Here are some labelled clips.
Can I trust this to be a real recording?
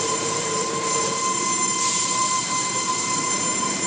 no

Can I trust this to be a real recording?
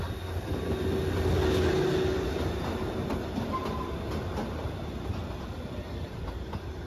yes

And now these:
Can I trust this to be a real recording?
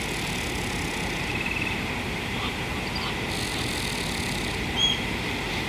yes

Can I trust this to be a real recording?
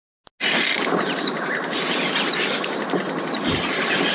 yes